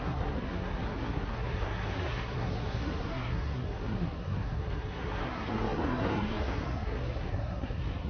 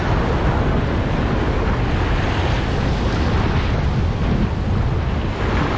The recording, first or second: second